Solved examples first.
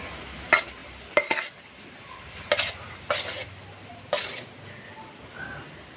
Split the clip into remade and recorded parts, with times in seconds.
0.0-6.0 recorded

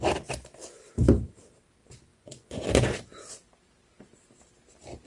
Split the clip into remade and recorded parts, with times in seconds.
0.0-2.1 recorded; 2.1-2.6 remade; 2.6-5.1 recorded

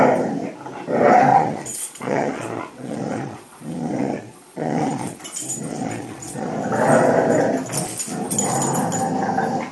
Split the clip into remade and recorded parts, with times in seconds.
0.0-1.3 recorded; 1.3-5.2 remade; 5.2-5.7 recorded; 5.7-6.5 remade; 6.5-9.7 recorded

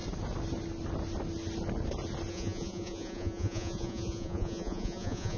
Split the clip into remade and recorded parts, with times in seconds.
0.0-2.3 recorded; 2.3-5.4 remade

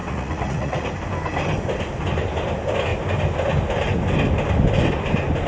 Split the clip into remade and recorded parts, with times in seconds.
0.0-0.9 remade; 0.9-5.5 recorded